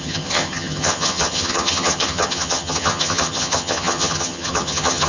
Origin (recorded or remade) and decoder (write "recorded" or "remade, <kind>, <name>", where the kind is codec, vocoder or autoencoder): remade, vocoder, HiFi-GAN